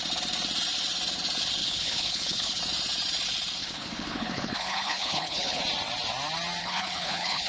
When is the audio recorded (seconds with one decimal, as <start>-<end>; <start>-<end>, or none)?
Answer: 0.0-1.6; 2.6-3.6; 5.6-6.6